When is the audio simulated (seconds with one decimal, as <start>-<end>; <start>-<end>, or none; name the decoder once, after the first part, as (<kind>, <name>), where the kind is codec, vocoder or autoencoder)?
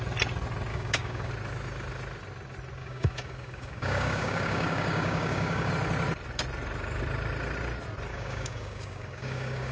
0.7-1.3 (codec, DAC); 2.8-5.7; 8.1-9.7